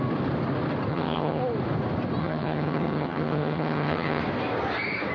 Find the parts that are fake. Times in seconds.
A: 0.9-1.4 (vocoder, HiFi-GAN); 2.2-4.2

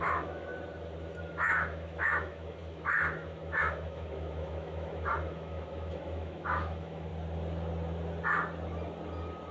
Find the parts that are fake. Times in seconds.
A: 0.0-0.5 (autoencoder, DAC-VAE); 1.2-7.1

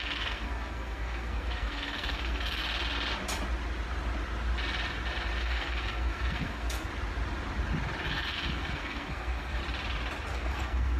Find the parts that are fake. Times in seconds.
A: 0.0-2.6 (codec, SNAC); 5.4-6.9; 8.1-9.6; 10.3-11.0

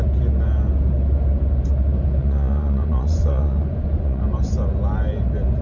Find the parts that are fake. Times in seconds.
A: 2.2-4.2 (vocoder, Vocos)